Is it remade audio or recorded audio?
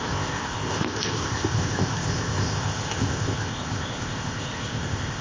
remade